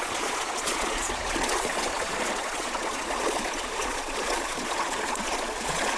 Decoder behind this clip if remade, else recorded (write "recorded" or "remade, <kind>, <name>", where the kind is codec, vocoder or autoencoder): remade, vocoder, Vocos